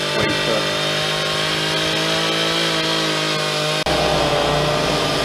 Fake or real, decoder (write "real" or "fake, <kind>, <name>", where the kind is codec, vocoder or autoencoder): real